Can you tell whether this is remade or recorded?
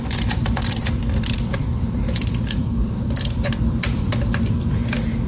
remade